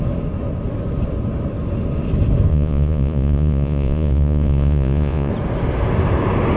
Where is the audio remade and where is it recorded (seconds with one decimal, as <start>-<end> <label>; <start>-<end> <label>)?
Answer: 0.0-2.5 recorded; 2.5-5.3 remade; 5.3-6.6 recorded